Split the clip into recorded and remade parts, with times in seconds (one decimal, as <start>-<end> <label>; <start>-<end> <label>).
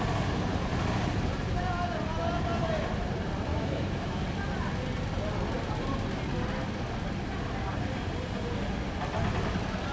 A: 0.0-3.5 recorded; 3.5-4.2 remade; 4.2-9.9 recorded